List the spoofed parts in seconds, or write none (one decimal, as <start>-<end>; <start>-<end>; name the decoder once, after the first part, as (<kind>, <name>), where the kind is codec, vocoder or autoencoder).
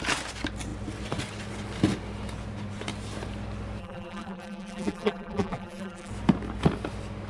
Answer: 3.8-6.1 (vocoder, BigVGAN v2)